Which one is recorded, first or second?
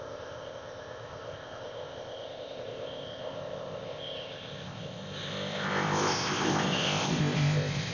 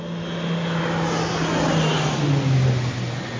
second